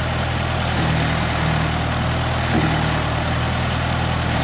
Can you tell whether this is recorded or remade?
recorded